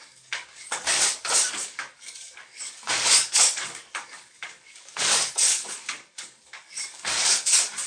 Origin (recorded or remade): remade